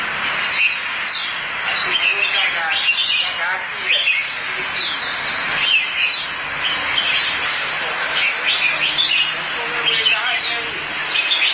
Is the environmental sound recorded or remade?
recorded